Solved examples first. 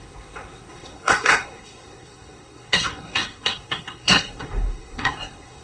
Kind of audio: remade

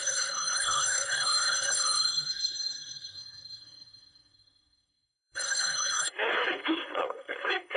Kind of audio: remade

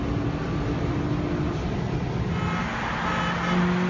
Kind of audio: recorded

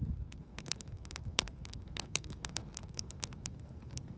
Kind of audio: remade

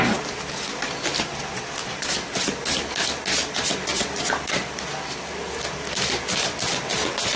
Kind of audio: recorded